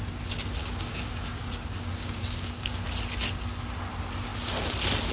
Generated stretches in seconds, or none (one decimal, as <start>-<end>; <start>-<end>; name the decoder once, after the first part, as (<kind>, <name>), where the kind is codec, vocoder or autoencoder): 0.6-2.8 (codec, DAC)